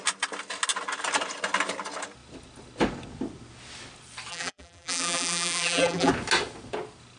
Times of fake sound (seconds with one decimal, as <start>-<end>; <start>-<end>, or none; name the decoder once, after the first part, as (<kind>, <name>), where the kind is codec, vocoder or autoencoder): 4.3-6.1 (vocoder, BigVGAN v2)